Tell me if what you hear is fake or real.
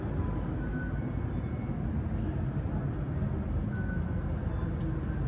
real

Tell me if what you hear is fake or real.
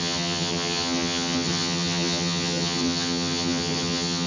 fake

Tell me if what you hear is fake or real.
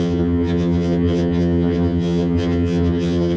fake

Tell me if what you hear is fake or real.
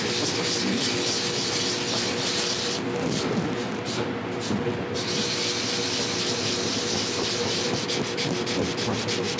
real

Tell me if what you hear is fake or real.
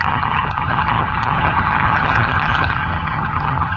fake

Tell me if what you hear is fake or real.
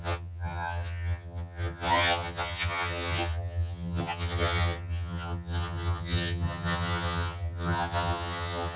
fake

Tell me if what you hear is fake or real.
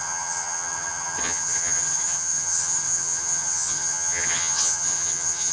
fake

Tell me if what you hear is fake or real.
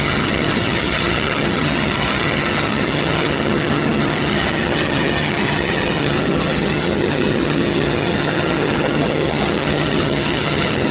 fake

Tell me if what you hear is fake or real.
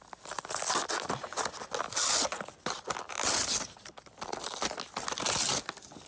real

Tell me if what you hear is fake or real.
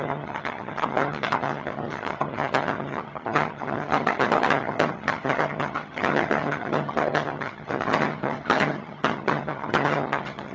fake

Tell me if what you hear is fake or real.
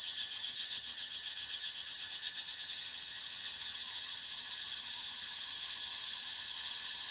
fake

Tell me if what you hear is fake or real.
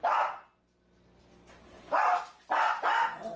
real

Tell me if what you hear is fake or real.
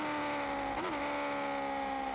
real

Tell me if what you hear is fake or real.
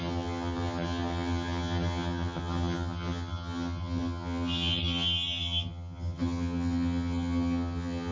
fake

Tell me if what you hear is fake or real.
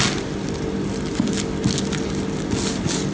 real